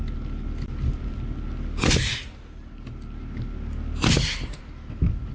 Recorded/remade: recorded